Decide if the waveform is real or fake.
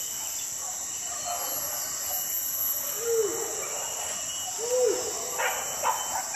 real